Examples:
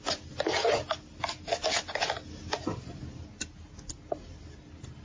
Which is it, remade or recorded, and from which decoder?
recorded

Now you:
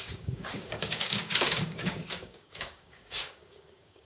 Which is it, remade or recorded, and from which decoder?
remade, codec, DAC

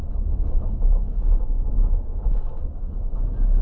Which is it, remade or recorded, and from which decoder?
remade, codec, DAC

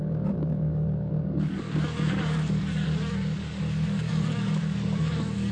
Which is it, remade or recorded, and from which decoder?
remade, codec, DAC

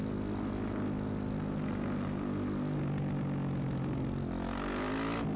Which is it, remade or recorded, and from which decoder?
recorded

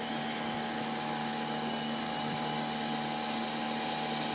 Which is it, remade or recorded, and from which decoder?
recorded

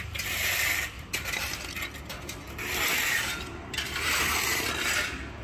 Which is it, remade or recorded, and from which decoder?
recorded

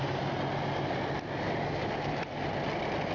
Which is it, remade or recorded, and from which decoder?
recorded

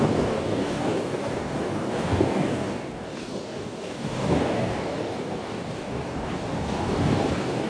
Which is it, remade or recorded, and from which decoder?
remade, codec, DAC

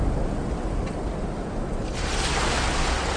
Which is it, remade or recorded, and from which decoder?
recorded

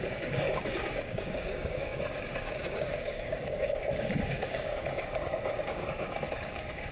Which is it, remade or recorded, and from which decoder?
remade, codec, DAC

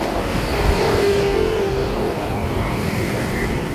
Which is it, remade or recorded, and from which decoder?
remade, codec, DAC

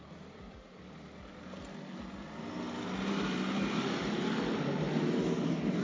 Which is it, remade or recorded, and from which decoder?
recorded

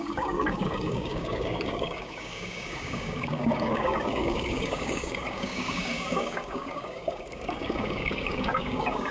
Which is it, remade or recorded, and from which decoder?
remade, codec, DAC